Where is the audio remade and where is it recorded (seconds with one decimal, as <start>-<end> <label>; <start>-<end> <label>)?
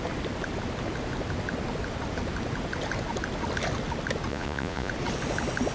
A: 0.0-4.3 recorded; 4.3-4.9 remade; 4.9-5.7 recorded